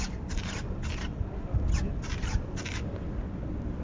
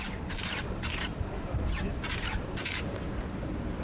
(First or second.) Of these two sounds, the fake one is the second